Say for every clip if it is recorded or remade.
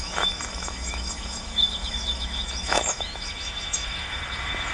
remade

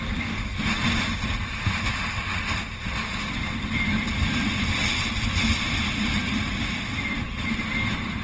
recorded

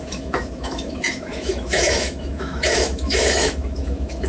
remade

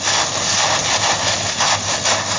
recorded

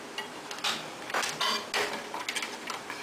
recorded